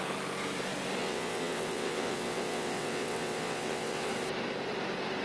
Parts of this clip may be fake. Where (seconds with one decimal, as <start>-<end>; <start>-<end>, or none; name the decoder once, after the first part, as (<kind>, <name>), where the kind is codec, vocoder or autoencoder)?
1.0-4.1 (vocoder, WaveNeXt)